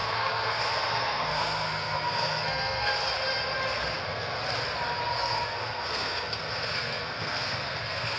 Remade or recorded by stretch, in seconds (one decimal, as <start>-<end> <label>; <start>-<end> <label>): 0.0-2.9 remade; 2.9-4.0 recorded; 4.0-4.4 remade; 4.4-5.1 recorded; 5.1-8.2 remade